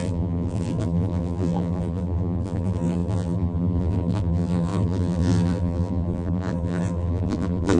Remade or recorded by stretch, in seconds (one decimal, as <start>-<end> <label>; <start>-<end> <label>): 0.0-7.8 remade